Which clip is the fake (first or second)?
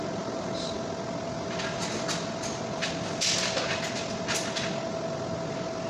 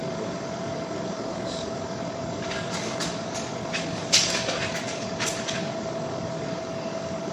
second